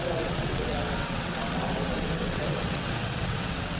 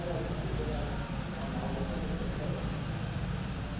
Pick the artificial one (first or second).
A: first